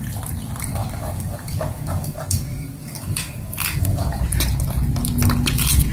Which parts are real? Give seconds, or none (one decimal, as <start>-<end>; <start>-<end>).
0.0-0.7; 4.2-5.9